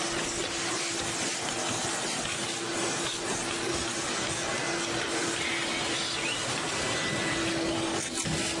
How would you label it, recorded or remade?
recorded